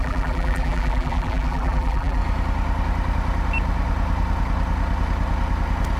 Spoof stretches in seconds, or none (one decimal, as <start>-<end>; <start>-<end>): 0.0-2.2